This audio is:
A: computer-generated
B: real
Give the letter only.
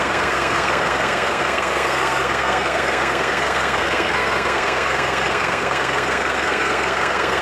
A